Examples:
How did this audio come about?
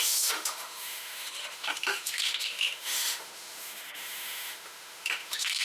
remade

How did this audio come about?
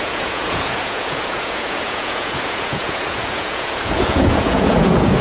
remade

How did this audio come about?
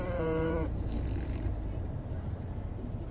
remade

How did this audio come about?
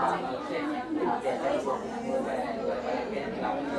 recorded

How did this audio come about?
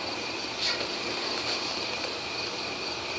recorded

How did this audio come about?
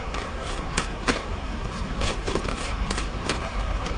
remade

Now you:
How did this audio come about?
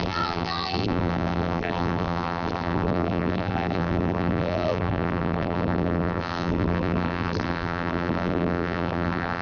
remade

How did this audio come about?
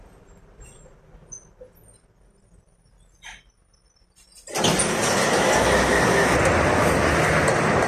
recorded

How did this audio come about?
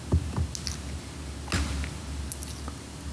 recorded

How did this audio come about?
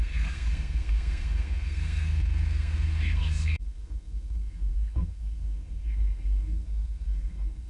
remade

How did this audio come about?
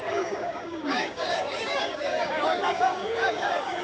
remade